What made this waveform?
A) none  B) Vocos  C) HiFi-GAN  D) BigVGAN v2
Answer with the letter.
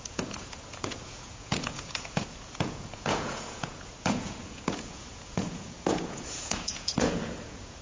B